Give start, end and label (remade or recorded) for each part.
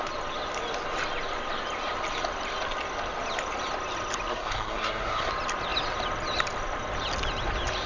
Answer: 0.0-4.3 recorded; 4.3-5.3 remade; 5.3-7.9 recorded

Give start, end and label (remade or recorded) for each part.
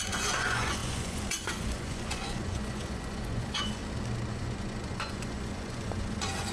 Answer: 0.0-3.8 remade; 3.8-4.3 recorded; 4.3-6.5 remade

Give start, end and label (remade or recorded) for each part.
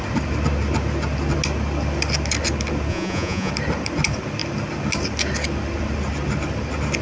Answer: 0.0-2.9 recorded; 2.9-3.5 remade; 3.5-7.0 recorded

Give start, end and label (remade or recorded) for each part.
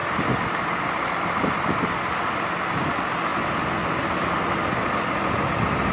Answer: 0.0-5.9 recorded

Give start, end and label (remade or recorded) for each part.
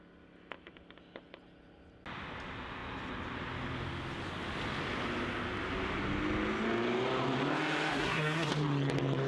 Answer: 0.0-7.9 recorded; 7.9-8.5 remade; 8.5-9.3 recorded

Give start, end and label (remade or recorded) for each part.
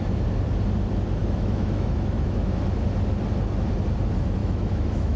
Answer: 0.0-1.2 recorded; 1.2-2.6 remade; 2.6-4.4 recorded; 4.4-5.2 remade